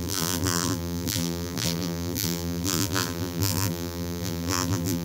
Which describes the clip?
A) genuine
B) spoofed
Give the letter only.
B